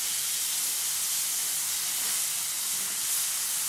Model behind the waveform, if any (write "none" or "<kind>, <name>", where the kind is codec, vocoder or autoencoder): none